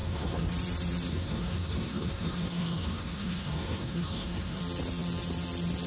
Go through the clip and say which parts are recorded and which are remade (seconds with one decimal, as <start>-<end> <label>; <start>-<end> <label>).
0.0-0.5 remade; 0.5-1.1 recorded; 1.1-4.6 remade; 4.6-5.9 recorded

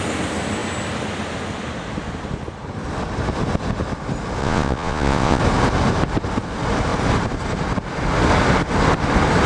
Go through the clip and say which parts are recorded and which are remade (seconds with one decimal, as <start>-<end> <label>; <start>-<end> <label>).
0.0-4.4 recorded; 4.4-5.4 remade; 5.4-9.5 recorded

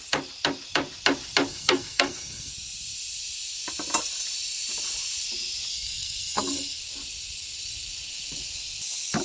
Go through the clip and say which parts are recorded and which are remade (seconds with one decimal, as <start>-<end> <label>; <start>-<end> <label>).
0.0-1.5 recorded; 1.5-2.5 remade; 2.5-5.7 recorded; 5.7-6.8 remade; 6.8-9.2 recorded

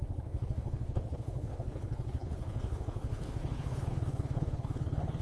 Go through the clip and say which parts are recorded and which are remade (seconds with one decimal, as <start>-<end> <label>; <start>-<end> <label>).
0.0-5.2 remade

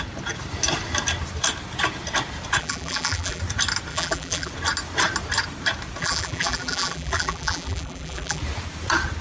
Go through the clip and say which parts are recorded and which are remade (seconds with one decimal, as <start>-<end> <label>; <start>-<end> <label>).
0.0-2.6 recorded; 2.6-3.4 remade; 3.4-3.9 recorded; 3.9-4.5 remade; 4.5-6.0 recorded; 6.0-8.4 remade; 8.4-9.2 recorded

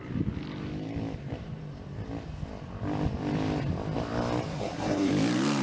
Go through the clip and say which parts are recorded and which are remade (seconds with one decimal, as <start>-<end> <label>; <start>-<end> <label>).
0.0-4.5 recorded; 4.5-5.1 remade; 5.1-5.6 recorded

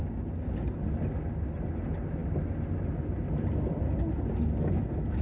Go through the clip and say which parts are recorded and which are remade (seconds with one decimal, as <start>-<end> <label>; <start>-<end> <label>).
0.0-5.2 recorded

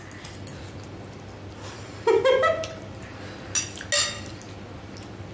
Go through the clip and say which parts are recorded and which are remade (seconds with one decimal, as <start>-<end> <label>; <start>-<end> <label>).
0.0-5.3 recorded